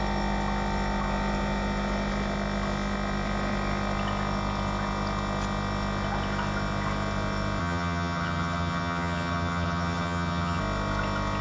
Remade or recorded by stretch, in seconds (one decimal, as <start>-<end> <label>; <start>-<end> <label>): 0.0-7.6 recorded; 7.6-10.6 remade; 10.6-11.4 recorded